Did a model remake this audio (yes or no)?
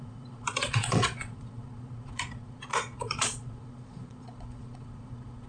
yes